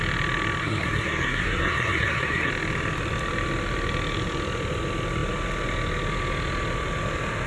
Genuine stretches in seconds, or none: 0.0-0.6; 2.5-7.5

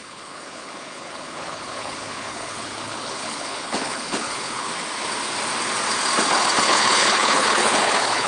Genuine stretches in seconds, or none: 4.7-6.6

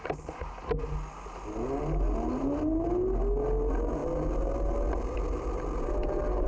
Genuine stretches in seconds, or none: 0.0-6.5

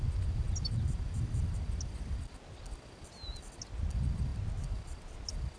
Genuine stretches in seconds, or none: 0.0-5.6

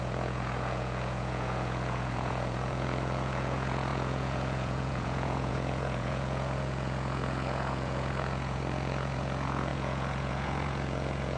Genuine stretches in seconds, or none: none

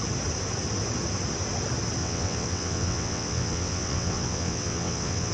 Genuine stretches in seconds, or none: 0.0-2.0

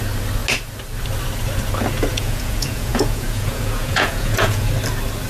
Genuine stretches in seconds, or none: 0.0-2.1; 4.7-5.3